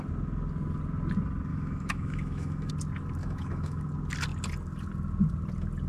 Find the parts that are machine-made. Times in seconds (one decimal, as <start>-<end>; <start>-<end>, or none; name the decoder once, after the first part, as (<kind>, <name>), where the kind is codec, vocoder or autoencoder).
1.5-2.7 (autoencoder, DAC-VAE); 3.2-3.8